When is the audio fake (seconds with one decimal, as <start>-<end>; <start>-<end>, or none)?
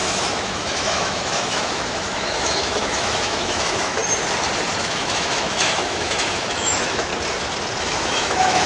0.0-4.0; 4.8-7.1; 7.8-8.7